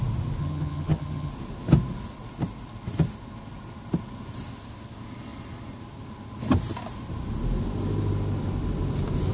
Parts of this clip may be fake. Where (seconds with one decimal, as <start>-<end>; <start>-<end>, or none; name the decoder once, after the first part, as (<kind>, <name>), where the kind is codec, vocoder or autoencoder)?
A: 0.4-1.3 (vocoder, HiFi-GAN)